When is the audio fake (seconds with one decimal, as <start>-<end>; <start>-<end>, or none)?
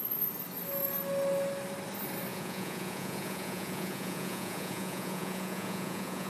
2.3-6.3